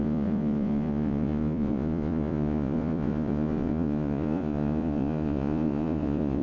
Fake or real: fake